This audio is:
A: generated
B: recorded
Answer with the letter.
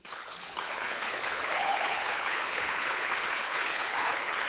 A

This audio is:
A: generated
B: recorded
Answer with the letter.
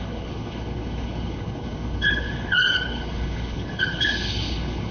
A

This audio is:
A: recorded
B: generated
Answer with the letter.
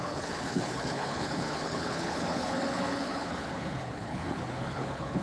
B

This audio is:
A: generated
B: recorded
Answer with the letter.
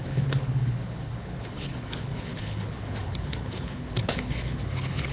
A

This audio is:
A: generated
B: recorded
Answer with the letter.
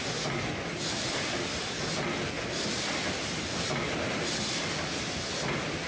B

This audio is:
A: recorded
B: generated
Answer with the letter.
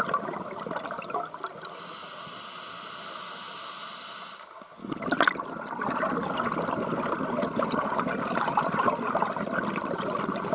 A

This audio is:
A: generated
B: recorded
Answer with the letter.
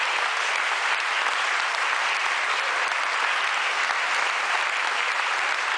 B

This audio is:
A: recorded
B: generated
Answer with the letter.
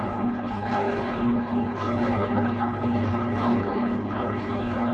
B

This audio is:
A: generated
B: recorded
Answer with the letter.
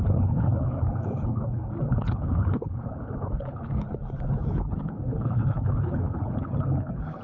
A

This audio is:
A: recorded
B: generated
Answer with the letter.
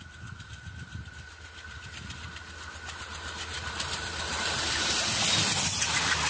A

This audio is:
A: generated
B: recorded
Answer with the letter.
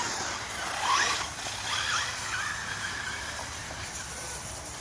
B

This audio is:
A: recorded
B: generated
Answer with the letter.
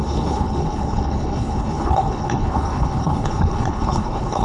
B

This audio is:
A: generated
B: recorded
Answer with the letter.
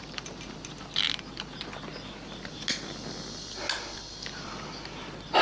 B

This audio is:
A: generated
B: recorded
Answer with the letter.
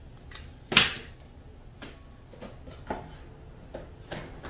B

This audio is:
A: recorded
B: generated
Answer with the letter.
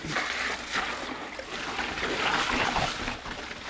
A